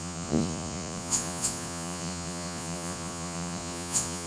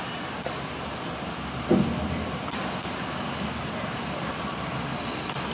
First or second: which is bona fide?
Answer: second